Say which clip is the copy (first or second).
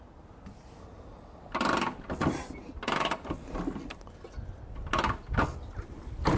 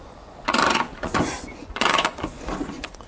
second